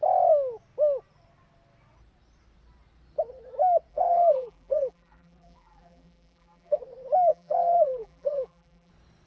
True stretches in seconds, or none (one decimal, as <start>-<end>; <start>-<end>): 0.0-3.9; 6.8-7.3; 8.9-9.3

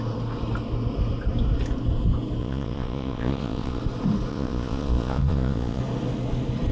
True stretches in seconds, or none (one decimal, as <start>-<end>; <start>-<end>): 0.0-2.4; 3.8-4.3; 5.8-6.7

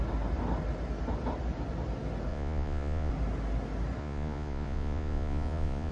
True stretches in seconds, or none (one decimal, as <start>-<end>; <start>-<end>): 0.0-2.3; 3.1-4.0

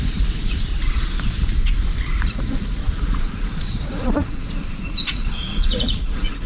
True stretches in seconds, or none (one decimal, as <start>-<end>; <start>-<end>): 0.7-2.2; 4.6-5.1

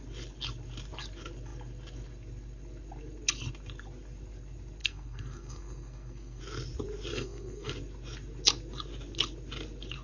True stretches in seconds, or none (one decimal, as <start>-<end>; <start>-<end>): 0.0-4.8; 6.4-7.1; 7.7-10.0

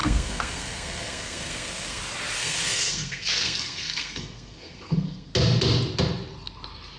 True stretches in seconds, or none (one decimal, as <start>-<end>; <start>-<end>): 2.0-2.4; 5.3-7.0

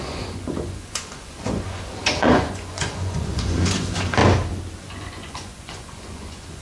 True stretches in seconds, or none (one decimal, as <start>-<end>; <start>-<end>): 4.2-4.8